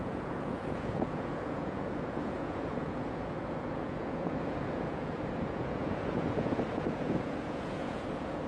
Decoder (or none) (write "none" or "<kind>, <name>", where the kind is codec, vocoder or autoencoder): vocoder, Vocos